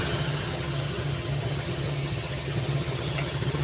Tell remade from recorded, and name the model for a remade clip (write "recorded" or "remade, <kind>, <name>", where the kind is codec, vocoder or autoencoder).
remade, vocoder, HiFi-GAN